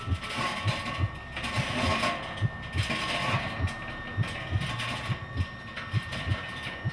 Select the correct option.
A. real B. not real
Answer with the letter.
A